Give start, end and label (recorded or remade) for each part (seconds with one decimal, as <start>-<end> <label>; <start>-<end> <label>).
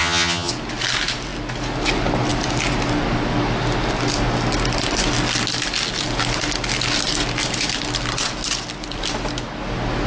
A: 0.0-0.5 remade; 0.5-10.1 recorded